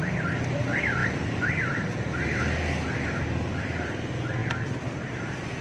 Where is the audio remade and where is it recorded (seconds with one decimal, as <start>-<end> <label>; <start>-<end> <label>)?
0.0-5.6 recorded